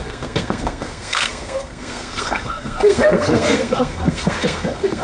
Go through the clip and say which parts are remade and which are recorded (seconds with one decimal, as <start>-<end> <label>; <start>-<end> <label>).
0.0-5.0 remade